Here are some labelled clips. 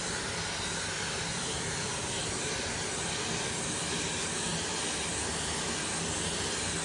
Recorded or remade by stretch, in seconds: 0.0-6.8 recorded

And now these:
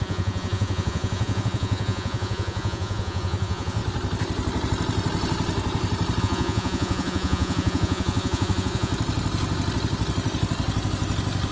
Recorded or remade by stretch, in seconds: 0.0-3.8 remade; 3.8-6.2 recorded; 6.2-8.9 remade; 8.9-11.5 recorded

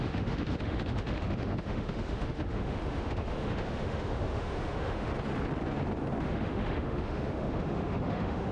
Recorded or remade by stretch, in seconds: 0.0-5.1 remade; 5.1-6.2 recorded; 6.2-8.5 remade